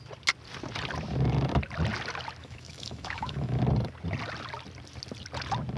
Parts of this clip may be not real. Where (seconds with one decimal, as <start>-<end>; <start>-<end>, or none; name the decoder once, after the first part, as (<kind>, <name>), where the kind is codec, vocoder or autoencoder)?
2.4-3.6 (autoencoder, DAC-VAE)